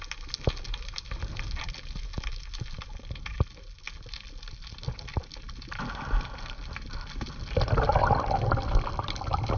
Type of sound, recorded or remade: recorded